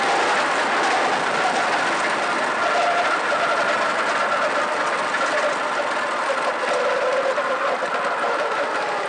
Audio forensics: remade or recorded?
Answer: recorded